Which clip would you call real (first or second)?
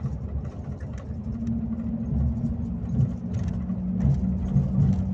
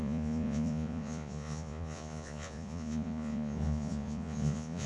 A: first